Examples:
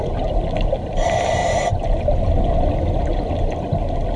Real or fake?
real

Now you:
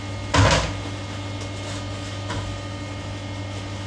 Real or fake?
real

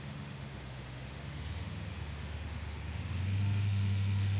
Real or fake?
fake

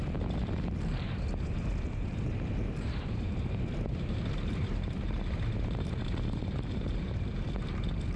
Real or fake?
fake